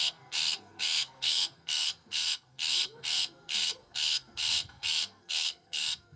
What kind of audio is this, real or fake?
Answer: fake